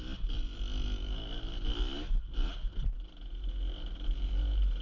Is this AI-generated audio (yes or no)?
no